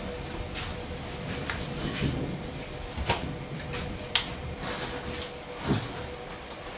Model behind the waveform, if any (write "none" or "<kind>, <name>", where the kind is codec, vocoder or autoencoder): none